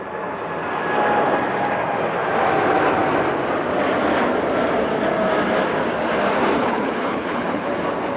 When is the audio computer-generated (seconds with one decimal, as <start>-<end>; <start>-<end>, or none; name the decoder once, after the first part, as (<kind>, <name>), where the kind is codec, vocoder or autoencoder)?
6.6-7.7 (codec, HILCodec)